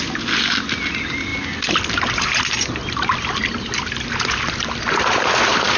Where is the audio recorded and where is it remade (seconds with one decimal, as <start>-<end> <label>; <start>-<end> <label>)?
0.0-5.8 recorded